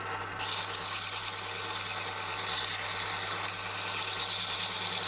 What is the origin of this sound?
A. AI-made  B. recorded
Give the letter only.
B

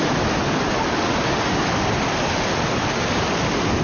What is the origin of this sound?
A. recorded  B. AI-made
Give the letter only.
A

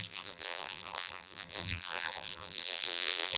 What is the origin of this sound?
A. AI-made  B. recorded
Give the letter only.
A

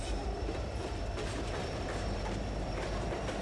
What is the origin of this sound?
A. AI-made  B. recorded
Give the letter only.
A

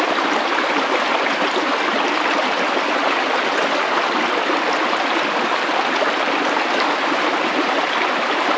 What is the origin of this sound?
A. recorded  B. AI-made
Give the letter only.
A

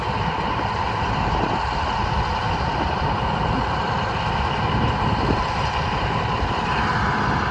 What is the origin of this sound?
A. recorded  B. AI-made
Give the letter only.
B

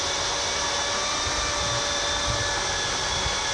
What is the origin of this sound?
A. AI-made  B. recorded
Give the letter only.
B